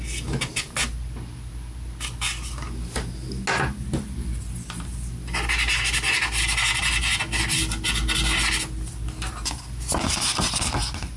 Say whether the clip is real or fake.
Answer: real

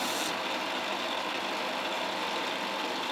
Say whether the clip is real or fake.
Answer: real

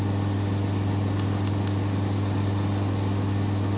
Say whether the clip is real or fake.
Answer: real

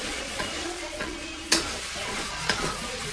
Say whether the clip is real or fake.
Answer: fake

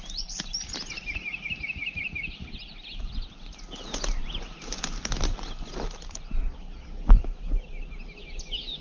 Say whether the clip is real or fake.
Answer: real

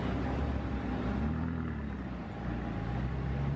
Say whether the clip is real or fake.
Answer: real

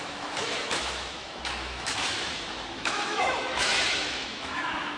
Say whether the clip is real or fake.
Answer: fake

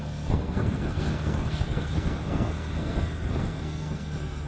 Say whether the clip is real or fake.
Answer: fake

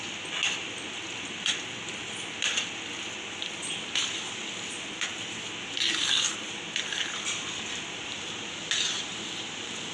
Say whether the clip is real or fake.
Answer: real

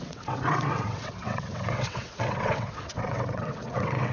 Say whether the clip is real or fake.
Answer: fake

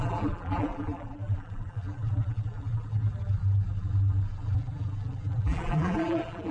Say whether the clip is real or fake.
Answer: fake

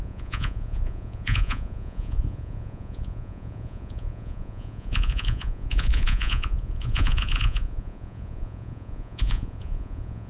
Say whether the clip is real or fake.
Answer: fake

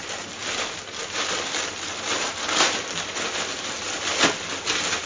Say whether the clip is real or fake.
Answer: real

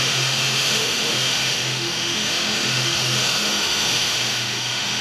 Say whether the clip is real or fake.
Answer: fake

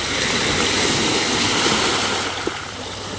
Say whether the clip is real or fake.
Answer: real